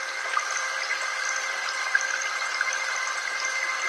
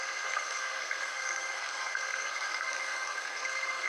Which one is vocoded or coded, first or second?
second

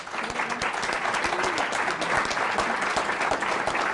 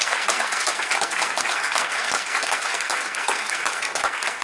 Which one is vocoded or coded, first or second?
second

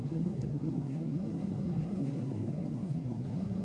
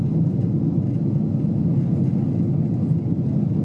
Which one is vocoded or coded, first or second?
first